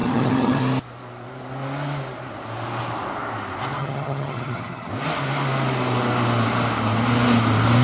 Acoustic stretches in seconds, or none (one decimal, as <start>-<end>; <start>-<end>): 0.6-3.8; 4.9-7.8

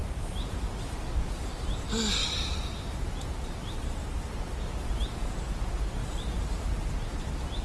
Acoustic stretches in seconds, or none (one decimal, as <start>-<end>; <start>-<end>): 0.7-2.2; 4.3-4.8; 5.3-6.0; 6.9-7.6

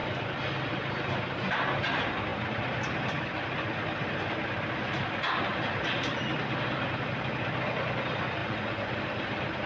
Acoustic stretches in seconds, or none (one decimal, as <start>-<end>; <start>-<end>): 0.0-8.4; 8.9-9.7

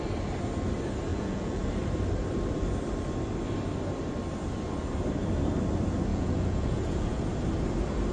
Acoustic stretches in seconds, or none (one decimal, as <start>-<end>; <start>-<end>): 0.0-1.1; 1.7-6.1; 7.2-8.1

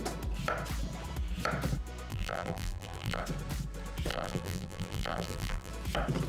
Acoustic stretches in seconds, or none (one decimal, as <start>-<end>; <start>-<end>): 0.0-2.1; 3.2-4.1; 5.7-6.3

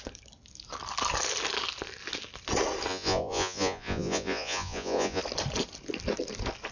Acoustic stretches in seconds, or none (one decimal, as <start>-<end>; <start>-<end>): 0.0-2.9; 5.2-6.7